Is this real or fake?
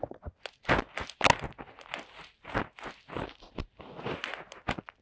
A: real